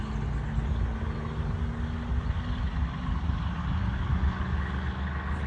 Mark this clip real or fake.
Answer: real